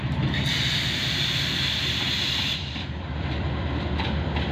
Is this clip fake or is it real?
real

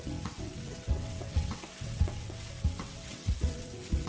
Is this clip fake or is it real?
fake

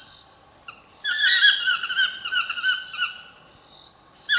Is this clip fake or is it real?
real